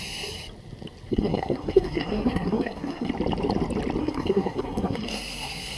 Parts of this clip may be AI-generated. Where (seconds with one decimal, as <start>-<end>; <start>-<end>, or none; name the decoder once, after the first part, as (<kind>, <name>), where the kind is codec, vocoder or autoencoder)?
1.1-3.1 (codec, SNAC); 4.0-5.8